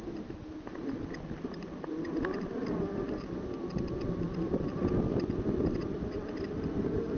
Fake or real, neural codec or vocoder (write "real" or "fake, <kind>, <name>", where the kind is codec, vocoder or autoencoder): real